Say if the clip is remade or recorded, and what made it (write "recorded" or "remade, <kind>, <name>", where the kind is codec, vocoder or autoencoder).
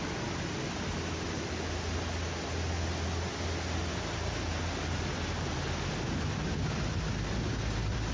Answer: recorded